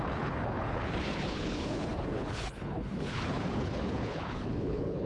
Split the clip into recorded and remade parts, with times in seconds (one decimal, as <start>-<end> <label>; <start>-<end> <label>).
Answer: 0.0-5.1 remade